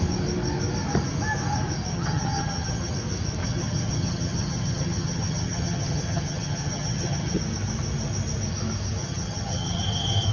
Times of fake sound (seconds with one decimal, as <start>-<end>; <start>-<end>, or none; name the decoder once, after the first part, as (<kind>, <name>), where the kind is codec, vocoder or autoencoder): 1.9-2.9 (vocoder, HiFi-GAN); 3.4-7.4; 9.0-9.8